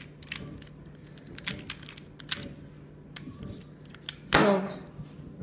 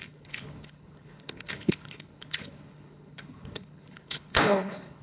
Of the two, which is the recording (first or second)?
first